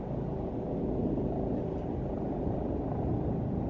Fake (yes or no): no